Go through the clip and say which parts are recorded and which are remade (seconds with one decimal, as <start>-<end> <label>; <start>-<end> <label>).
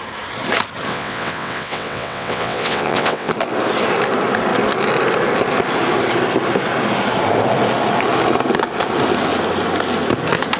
0.0-0.9 recorded; 0.9-3.3 remade; 3.3-10.6 recorded